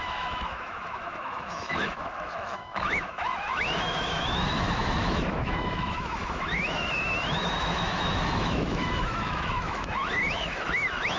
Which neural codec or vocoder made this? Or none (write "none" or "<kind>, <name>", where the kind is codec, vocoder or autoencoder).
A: autoencoder, DAC-VAE